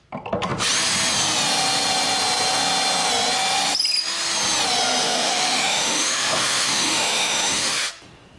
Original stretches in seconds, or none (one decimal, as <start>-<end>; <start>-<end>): 0.0-5.0; 7.9-8.4